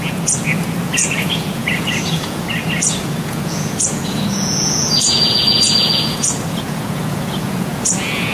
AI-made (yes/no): yes